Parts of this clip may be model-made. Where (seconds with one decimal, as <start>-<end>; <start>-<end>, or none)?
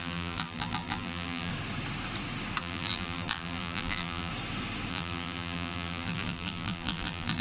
0.0-1.5; 2.6-4.3; 4.9-7.4